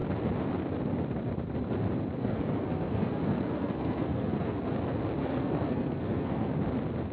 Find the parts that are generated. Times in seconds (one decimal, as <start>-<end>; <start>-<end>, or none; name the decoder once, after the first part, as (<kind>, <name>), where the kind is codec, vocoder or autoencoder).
2.2-4.6 (codec, SNAC); 5.2-6.5